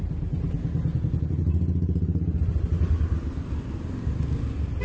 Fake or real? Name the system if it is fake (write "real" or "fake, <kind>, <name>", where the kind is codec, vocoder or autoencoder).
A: real